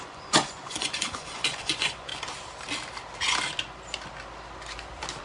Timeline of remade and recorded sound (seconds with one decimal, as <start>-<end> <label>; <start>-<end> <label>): 0.0-2.1 remade; 2.1-5.2 recorded